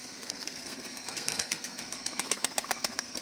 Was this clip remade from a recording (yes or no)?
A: yes